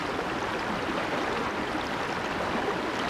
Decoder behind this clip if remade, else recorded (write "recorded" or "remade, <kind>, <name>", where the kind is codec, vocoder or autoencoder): recorded